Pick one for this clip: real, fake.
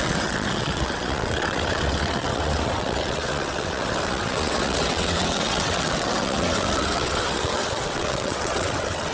fake